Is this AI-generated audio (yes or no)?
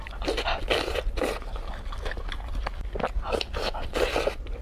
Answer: no